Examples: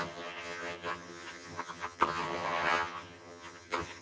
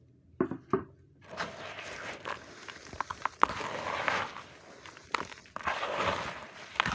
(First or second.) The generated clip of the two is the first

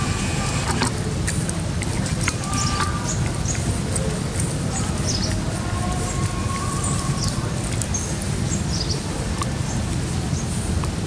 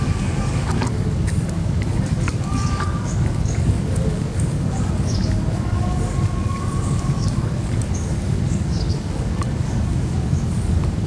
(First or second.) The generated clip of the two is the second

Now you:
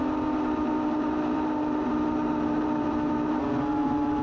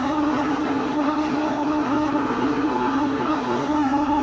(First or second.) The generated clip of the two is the second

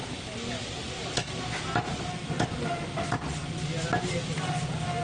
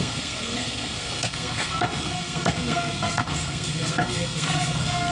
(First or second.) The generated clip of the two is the second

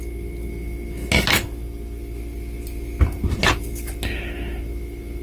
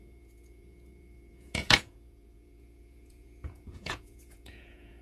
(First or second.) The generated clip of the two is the second